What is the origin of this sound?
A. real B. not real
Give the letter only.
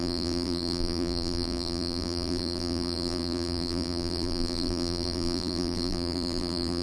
B